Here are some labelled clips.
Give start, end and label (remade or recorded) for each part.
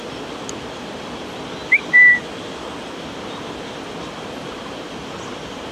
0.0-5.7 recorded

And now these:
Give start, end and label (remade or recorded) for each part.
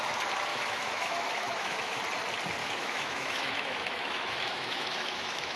0.0-0.5 recorded; 0.5-2.0 remade; 2.0-2.6 recorded; 2.6-5.6 remade